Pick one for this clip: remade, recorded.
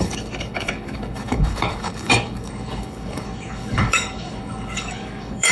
remade